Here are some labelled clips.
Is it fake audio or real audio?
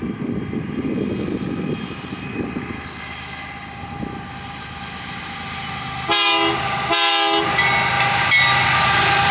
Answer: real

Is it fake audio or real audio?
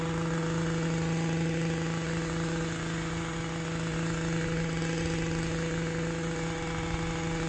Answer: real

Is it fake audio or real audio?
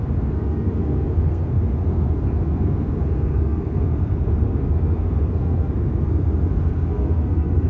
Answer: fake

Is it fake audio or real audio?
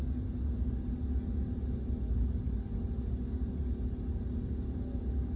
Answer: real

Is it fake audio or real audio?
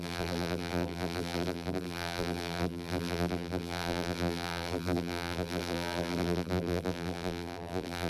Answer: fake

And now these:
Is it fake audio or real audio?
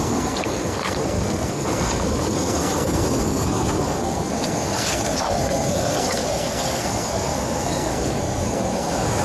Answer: fake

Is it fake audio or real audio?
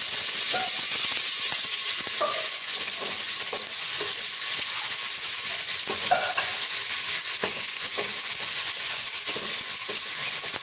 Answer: fake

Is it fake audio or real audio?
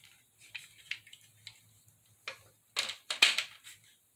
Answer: real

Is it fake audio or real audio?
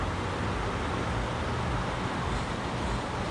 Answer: real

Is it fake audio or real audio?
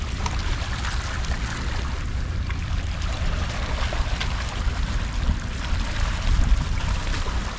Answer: real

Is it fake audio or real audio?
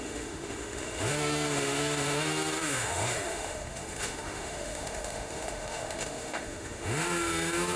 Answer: fake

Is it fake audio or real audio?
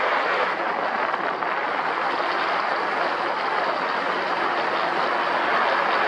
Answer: real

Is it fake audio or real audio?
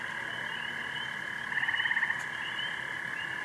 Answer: real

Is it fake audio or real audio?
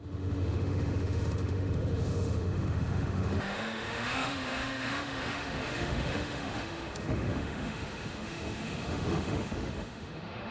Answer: fake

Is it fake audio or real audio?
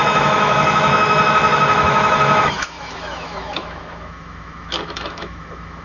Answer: fake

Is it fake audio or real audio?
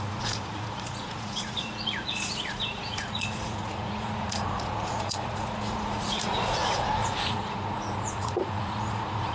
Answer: fake